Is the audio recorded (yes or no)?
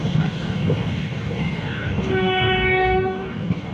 no